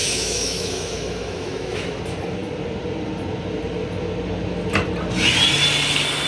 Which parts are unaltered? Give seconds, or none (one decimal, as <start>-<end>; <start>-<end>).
2.0-6.3